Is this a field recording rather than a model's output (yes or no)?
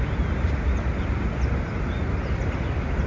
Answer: yes